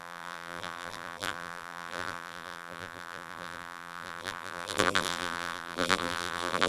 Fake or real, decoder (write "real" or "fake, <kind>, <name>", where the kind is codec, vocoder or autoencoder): fake, vocoder, BigVGAN v2